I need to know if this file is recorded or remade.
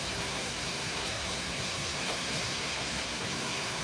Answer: remade